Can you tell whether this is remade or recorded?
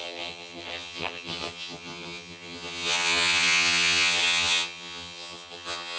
remade